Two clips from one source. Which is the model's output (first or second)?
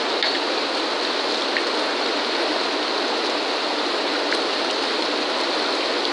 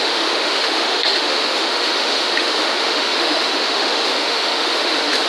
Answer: second